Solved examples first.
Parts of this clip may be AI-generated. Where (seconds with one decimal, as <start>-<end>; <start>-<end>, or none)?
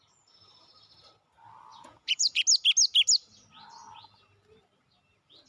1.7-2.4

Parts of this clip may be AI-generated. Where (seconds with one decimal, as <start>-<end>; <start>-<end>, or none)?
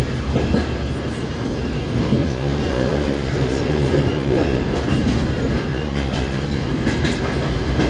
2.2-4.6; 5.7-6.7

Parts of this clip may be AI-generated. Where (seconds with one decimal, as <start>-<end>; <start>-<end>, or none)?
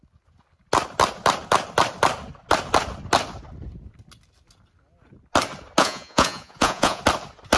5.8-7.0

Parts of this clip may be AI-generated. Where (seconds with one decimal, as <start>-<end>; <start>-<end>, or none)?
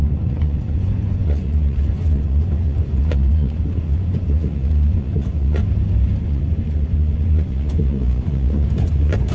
0.0-5.6; 6.2-9.3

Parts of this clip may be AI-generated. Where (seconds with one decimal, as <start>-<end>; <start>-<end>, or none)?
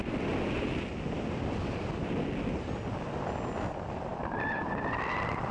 none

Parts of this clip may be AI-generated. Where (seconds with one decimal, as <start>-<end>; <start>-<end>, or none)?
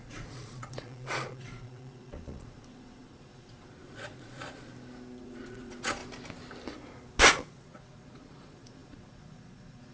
0.0-4.7; 5.2-6.0; 7.3-9.9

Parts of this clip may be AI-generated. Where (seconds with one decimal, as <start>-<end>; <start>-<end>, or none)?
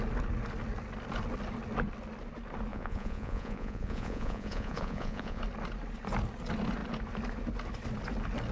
2.7-5.4